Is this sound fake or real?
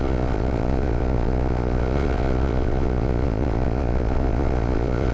fake